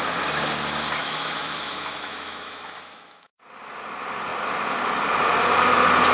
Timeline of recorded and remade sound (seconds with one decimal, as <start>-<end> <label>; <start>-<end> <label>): 0.0-1.0 recorded; 1.0-3.4 remade; 3.4-6.1 recorded